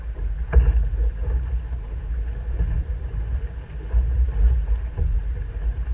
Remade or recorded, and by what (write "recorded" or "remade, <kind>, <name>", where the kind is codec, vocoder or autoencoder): remade, vocoder, BigVGAN v2